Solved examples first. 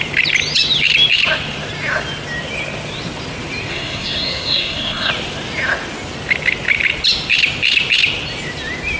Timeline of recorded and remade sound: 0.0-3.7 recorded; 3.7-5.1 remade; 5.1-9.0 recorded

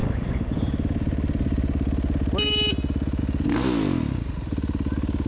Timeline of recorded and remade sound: 0.0-5.3 recorded

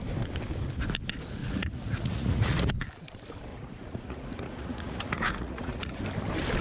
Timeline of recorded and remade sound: 0.0-1.4 recorded; 1.4-2.7 remade; 2.7-3.5 recorded; 3.5-6.0 remade; 6.0-6.6 recorded

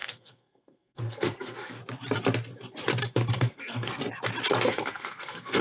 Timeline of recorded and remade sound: 0.0-1.8 remade; 1.8-3.3 recorded; 3.3-4.0 remade; 4.0-4.7 recorded; 4.7-5.6 remade

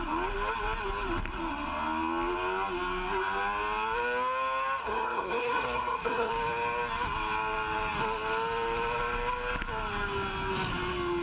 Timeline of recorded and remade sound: 0.0-4.8 recorded; 4.8-6.3 remade; 6.3-11.2 recorded

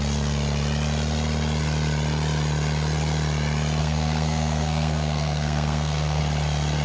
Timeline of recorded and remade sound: 0.0-3.8 recorded; 3.8-6.2 remade; 6.2-6.8 recorded

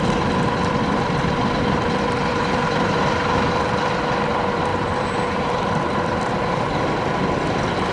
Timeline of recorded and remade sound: 0.0-2.3 recorded; 2.3-3.8 remade; 3.8-4.7 recorded; 4.7-5.8 remade; 5.8-7.9 recorded